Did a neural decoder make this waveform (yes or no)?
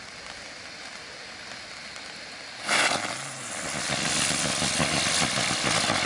no